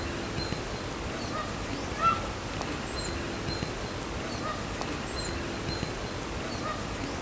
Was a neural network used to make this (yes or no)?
no